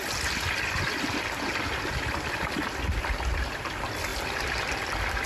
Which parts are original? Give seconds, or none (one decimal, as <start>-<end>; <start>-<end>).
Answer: 0.0-5.3